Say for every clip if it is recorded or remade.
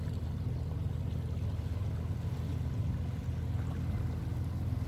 recorded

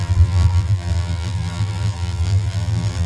remade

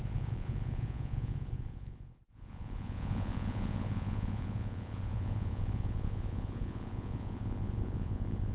remade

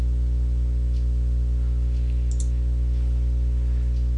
recorded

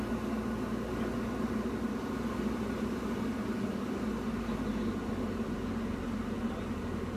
recorded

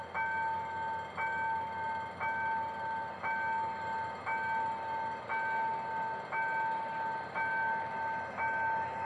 recorded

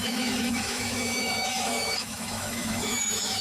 remade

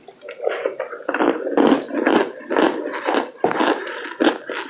recorded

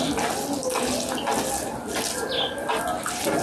recorded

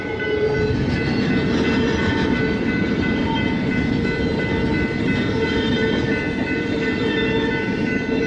recorded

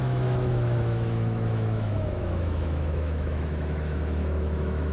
remade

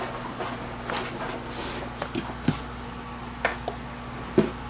recorded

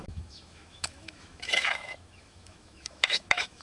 remade